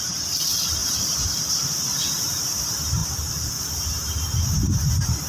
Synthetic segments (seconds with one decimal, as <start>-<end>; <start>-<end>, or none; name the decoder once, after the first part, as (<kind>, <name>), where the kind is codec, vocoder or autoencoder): 0.0-3.0 (vocoder, BigVGAN v2); 3.6-5.3